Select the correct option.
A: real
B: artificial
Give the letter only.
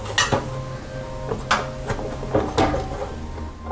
A